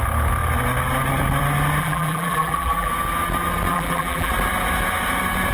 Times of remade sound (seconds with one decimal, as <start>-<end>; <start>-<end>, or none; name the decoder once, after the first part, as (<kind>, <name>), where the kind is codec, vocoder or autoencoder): 1.8-2.9 (vocoder, BigVGAN v2); 3.7-4.3